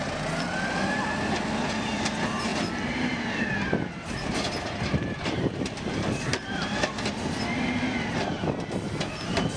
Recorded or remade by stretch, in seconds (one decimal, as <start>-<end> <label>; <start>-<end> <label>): 0.0-9.6 recorded